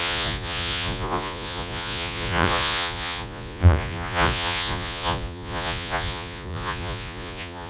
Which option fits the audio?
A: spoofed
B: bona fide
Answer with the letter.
A